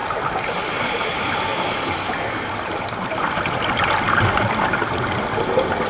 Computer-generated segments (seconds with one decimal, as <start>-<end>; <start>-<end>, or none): 0.7-5.9